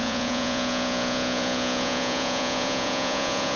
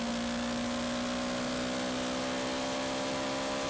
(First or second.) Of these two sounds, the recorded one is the second